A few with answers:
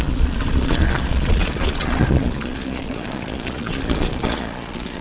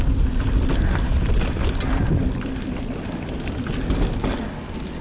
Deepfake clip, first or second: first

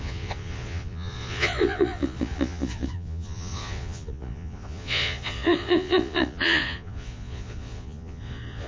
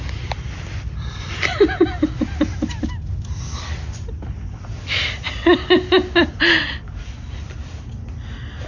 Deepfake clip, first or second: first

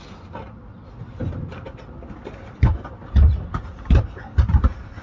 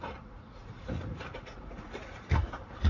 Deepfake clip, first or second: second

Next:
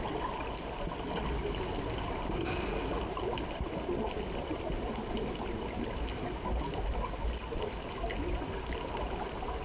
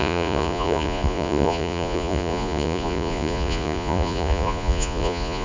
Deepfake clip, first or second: second